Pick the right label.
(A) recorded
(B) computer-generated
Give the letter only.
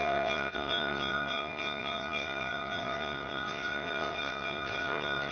B